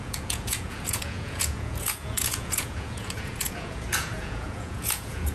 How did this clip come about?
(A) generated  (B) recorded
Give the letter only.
A